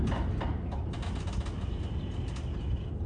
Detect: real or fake real